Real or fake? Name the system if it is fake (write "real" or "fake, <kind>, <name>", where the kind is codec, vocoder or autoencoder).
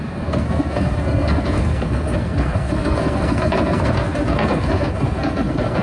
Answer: fake, codec, SNAC